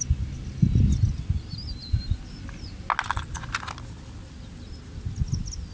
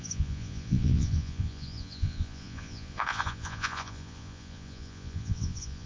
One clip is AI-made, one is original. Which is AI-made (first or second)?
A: second